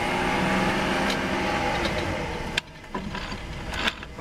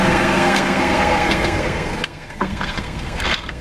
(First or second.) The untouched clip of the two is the first